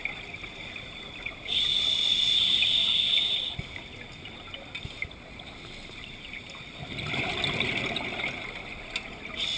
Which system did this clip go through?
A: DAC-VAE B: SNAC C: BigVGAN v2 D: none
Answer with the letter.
D